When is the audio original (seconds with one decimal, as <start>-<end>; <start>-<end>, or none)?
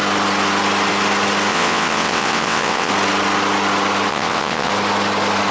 0.0-1.5; 2.9-4.1; 4.7-5.5